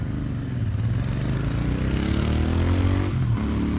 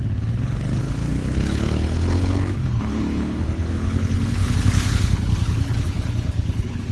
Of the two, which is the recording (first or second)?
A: first